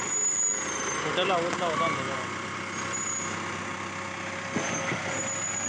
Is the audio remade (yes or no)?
no